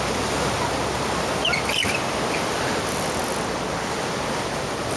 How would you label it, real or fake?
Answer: real